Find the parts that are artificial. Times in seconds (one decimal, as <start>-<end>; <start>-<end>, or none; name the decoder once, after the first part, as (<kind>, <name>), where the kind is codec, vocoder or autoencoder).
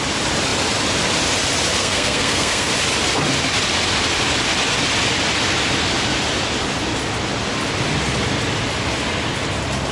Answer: 1.8-2.7 (codec, SNAC)